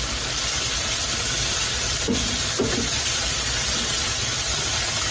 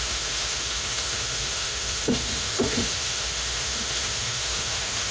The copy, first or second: second